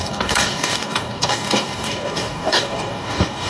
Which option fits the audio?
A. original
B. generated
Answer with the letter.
B